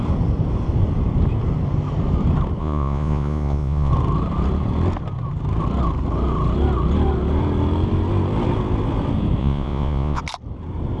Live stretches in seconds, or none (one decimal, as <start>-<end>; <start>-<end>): 0.0-2.6; 3.9-9.4; 10.2-11.0